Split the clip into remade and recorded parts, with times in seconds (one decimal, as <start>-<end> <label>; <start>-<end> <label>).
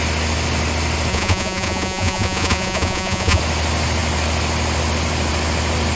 0.0-1.1 recorded; 1.1-3.4 remade; 3.4-6.0 recorded